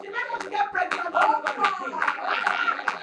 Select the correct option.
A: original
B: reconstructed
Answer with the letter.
B